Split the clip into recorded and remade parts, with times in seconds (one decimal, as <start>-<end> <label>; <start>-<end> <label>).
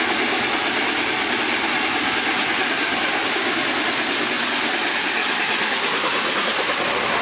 0.0-7.2 recorded